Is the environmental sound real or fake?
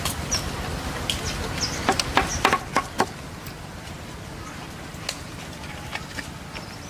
real